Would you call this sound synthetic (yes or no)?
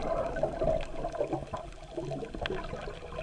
no